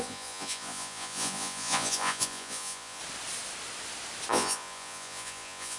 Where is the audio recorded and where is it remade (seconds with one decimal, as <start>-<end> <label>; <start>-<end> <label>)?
0.0-3.0 remade; 3.0-4.3 recorded; 4.3-5.8 remade